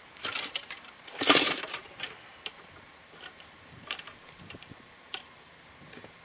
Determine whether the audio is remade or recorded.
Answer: remade